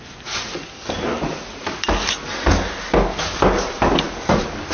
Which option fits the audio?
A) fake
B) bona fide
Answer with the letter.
B